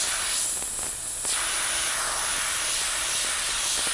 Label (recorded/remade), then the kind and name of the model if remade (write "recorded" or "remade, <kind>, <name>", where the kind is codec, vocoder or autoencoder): recorded